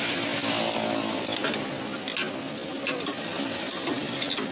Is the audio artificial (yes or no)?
no